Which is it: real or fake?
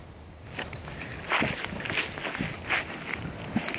real